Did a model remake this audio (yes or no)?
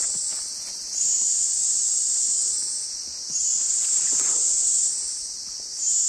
no